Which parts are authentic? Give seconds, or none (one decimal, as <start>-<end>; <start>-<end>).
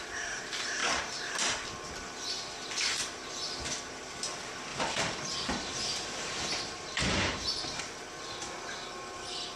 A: 0.0-4.7; 7.8-9.6